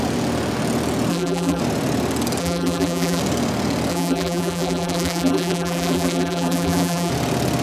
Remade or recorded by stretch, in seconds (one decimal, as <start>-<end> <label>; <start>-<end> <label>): 0.0-1.1 recorded; 1.1-1.6 remade; 1.6-2.4 recorded; 2.4-3.2 remade; 3.2-3.9 recorded; 3.9-7.1 remade; 7.1-7.6 recorded